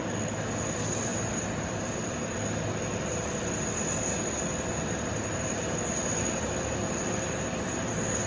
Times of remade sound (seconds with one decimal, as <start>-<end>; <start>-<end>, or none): none